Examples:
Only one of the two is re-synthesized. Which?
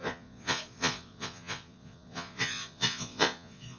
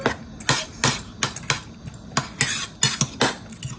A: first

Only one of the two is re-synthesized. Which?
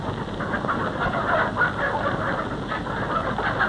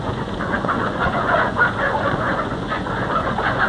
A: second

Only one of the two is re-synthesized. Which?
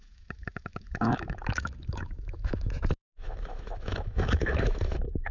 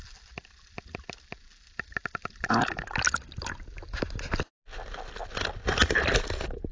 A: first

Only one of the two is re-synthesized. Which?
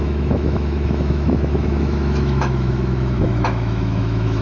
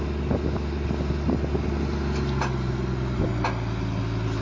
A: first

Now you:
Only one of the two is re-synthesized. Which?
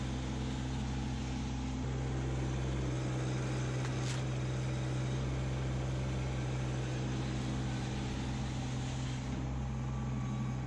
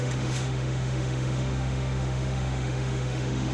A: second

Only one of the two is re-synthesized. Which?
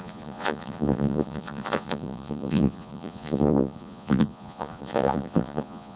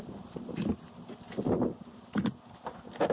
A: first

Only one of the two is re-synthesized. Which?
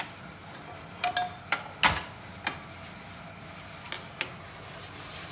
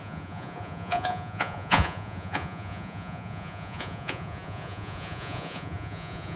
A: second